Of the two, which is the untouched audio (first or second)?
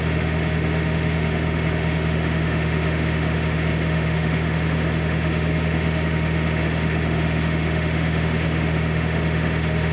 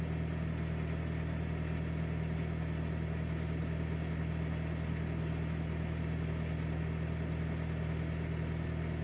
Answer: second